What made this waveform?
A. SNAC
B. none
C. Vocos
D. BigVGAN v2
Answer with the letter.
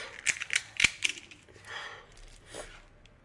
B